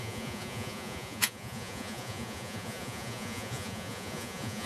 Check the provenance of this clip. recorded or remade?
remade